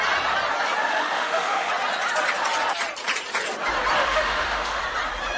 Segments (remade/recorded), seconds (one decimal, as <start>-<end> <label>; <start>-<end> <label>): 0.0-0.8 recorded; 0.8-1.7 remade; 1.7-4.0 recorded; 4.0-4.8 remade; 4.8-5.4 recorded